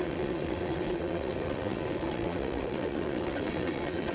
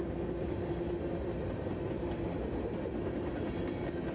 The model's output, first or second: first